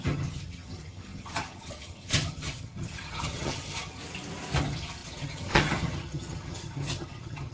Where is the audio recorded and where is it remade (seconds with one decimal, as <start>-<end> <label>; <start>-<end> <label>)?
0.0-4.0 remade; 4.0-4.6 recorded; 4.6-7.5 remade